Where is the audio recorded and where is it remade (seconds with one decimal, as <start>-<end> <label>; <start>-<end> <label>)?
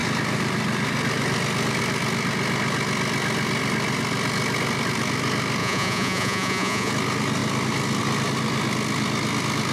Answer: 0.0-5.6 recorded; 5.6-6.9 remade; 6.9-9.7 recorded